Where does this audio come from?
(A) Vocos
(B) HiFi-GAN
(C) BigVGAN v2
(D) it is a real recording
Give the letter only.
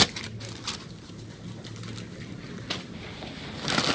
D